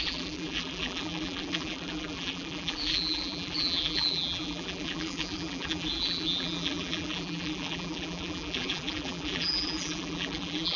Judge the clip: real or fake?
fake